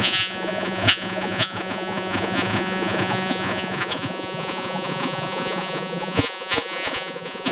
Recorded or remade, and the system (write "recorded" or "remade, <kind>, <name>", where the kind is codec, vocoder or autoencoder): remade, vocoder, Vocos